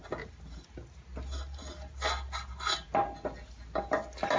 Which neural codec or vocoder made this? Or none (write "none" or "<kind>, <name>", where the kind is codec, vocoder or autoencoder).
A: none